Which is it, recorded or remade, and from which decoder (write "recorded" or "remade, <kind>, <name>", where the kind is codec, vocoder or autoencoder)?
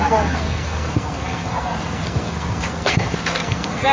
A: remade, codec, SNAC